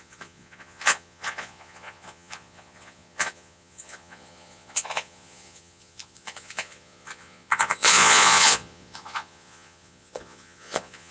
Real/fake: fake